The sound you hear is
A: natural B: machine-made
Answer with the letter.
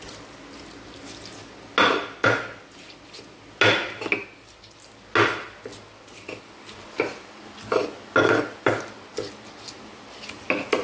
A